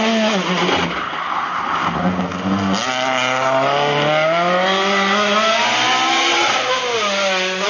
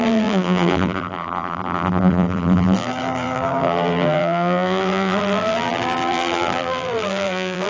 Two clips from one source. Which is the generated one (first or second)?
second